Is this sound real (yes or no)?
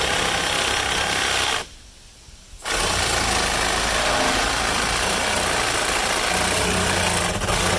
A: yes